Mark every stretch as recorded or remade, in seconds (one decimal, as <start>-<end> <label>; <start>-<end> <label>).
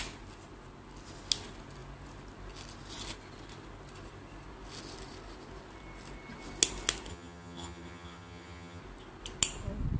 0.0-7.1 recorded; 7.1-8.8 remade; 8.8-10.0 recorded